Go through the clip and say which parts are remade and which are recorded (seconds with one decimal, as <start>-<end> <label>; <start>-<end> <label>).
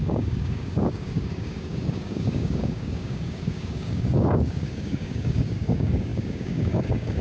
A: 0.0-7.2 remade